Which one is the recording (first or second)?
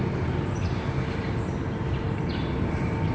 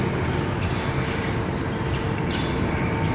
second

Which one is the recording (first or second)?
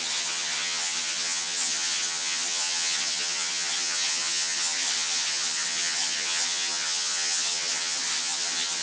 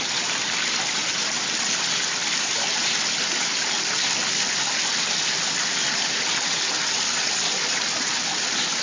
second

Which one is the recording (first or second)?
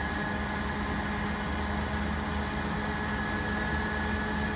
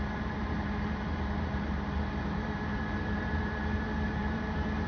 first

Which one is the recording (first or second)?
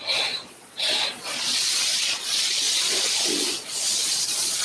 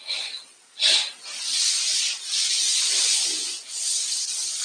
second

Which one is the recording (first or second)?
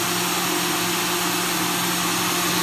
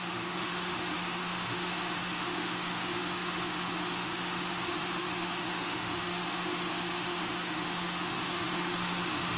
first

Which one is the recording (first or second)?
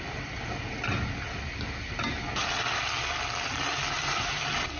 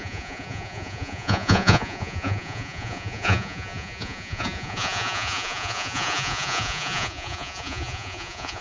first